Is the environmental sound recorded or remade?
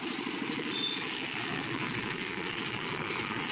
remade